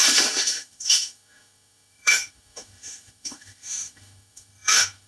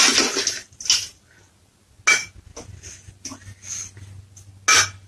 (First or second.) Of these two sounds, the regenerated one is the first